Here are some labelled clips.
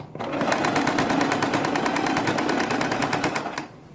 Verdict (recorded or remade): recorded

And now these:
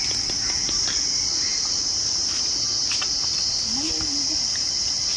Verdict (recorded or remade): recorded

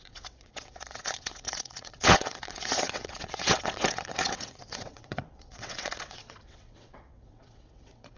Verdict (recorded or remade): remade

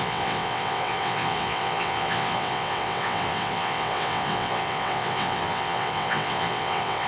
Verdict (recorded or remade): remade